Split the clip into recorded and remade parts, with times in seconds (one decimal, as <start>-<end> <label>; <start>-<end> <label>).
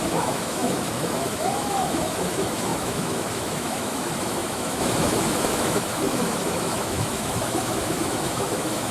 0.0-8.9 remade